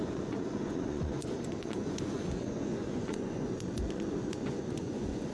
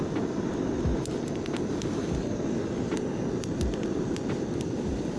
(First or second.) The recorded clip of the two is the second